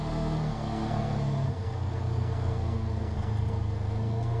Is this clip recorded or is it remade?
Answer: remade